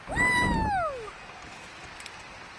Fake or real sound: real